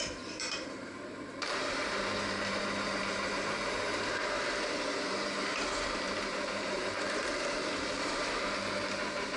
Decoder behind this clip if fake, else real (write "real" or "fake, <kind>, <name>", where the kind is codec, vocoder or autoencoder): fake, vocoder, BigVGAN v2